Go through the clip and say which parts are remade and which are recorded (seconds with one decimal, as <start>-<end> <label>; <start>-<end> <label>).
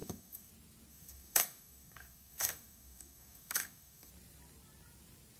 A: 0.0-0.5 remade; 0.5-0.9 recorded; 0.9-4.1 remade; 4.1-5.4 recorded